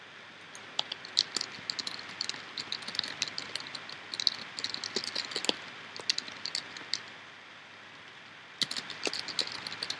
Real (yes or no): yes